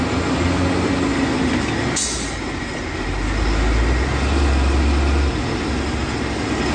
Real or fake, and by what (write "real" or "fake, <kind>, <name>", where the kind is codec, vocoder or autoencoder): real